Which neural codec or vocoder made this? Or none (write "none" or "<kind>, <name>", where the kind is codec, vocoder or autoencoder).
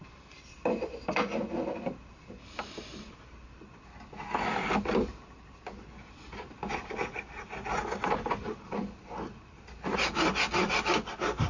none